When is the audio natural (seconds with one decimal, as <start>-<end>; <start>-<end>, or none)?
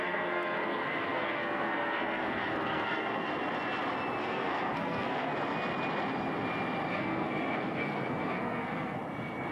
3.3-4.2; 5.3-6.9; 9.0-9.5